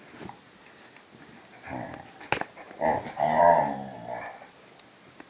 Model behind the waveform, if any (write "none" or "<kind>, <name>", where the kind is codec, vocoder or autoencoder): none